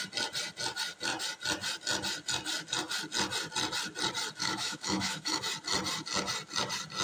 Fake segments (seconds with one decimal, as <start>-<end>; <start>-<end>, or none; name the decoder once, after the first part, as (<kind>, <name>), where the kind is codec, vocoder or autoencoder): 4.4-5.4 (autoencoder, DAC-VAE)